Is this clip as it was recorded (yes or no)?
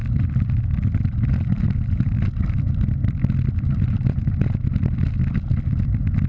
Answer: yes